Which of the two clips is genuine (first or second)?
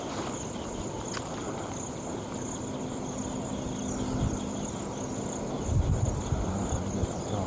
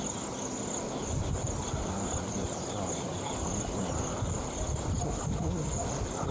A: first